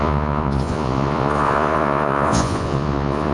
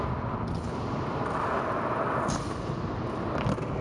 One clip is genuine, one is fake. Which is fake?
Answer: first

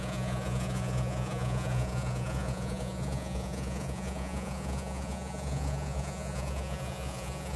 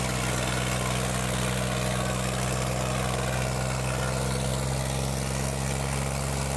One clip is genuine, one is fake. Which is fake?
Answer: first